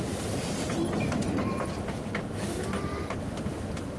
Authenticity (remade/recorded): recorded